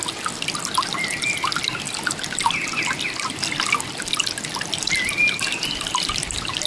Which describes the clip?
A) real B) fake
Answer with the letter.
A